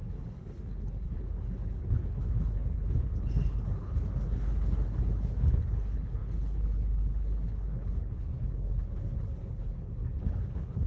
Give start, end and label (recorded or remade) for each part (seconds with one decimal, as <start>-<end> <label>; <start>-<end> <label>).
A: 0.0-10.9 remade